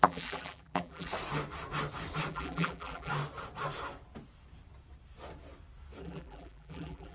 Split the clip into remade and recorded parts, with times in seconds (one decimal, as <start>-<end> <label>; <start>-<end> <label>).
0.0-1.1 remade; 1.1-2.3 recorded; 2.3-3.1 remade; 3.1-6.0 recorded; 6.0-7.1 remade